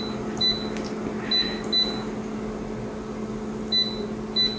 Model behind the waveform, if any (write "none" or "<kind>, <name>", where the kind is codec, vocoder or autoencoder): none